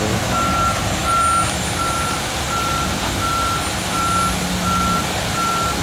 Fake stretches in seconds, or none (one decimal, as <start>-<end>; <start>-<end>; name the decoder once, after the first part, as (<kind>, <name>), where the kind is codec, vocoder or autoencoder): none

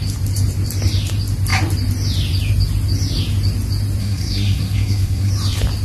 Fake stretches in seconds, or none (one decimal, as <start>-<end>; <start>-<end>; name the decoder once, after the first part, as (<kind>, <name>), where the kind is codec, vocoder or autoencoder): 4.0-5.3 (codec, SNAC)

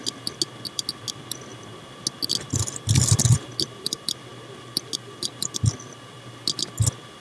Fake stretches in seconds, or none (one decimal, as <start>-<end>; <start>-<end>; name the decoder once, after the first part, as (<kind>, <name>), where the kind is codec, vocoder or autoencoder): none

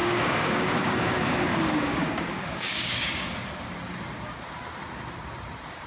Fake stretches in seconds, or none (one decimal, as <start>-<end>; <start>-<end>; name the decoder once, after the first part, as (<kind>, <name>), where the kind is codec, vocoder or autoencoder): 0.0-3.5 (codec, DAC)

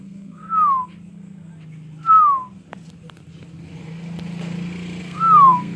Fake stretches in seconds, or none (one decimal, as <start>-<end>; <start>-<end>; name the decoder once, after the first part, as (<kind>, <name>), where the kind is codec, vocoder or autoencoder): 0.0-0.4 (codec, SNAC); 1.1-1.5; 5.0-5.8

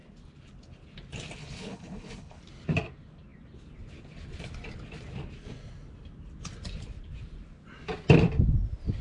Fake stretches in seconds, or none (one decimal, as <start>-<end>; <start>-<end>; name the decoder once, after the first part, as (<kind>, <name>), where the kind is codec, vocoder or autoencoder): 1.4-2.4 (codec, HILCodec)

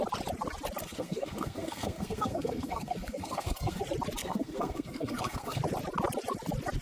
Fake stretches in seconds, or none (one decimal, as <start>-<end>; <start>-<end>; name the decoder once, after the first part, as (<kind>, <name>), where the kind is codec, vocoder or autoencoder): 0.8-3.8 (codec, SNAC); 4.2-5.6